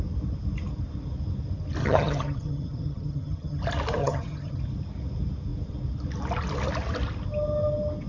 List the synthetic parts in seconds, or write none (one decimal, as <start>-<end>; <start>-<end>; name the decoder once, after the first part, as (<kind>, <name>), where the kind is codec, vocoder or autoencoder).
1.8-3.6 (vocoder, HiFi-GAN); 4.0-4.6